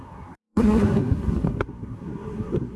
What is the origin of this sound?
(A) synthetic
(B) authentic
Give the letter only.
A